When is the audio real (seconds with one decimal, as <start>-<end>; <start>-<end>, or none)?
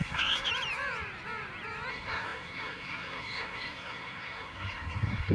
0.5-1.9